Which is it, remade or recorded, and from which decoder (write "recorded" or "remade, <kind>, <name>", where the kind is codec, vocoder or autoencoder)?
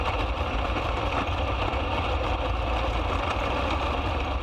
remade, vocoder, BigVGAN v2